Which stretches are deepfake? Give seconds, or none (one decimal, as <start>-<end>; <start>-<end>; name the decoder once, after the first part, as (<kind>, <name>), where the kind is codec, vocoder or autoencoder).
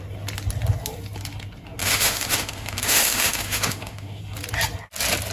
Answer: 1.8-4.2 (autoencoder, DAC-VAE)